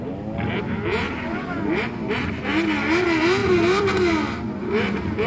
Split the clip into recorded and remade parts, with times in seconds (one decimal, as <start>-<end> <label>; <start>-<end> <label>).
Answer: 0.0-5.3 recorded